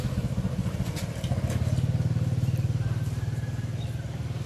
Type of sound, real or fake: real